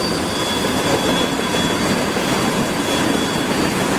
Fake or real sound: real